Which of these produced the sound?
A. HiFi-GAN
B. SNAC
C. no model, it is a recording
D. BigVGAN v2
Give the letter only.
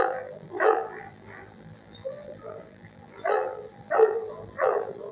D